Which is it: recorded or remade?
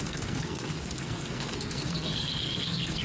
remade